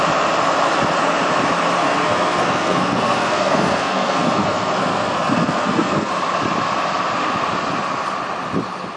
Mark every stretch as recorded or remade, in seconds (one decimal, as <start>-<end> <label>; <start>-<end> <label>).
0.0-1.8 recorded; 1.8-6.1 remade; 6.1-9.0 recorded